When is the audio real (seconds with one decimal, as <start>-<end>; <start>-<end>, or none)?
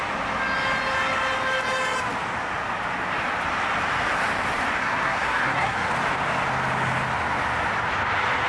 0.0-4.8; 5.9-8.5